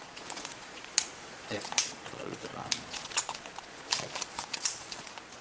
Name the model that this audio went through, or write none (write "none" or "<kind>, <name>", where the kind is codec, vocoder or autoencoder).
vocoder, Vocos